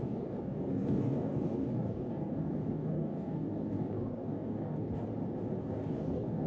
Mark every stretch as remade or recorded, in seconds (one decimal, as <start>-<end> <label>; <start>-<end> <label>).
0.0-5.1 remade; 5.1-5.6 recorded; 5.6-6.5 remade